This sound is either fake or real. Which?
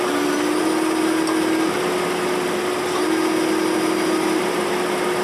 real